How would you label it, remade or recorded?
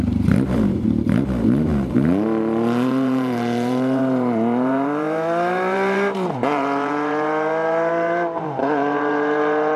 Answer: remade